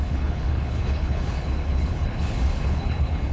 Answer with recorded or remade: remade